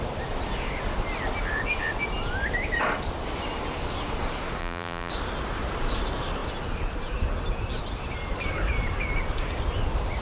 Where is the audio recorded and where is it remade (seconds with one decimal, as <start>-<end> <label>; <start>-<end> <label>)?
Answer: 0.0-4.6 recorded; 4.6-5.1 remade; 5.1-10.2 recorded